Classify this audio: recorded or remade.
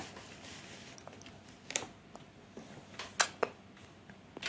recorded